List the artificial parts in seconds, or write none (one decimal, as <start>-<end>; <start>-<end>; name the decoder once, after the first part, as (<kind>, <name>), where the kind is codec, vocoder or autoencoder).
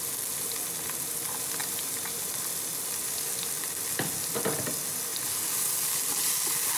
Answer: none